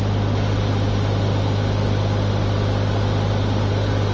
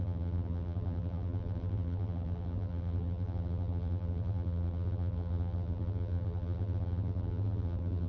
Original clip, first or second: first